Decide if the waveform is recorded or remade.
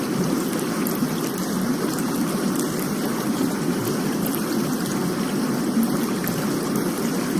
recorded